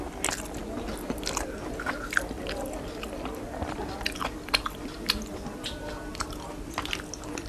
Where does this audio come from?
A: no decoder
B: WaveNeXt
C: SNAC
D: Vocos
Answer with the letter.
A